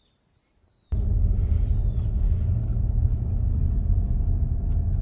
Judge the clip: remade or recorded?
recorded